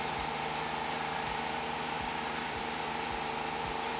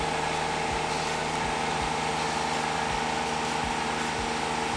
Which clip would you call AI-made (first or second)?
first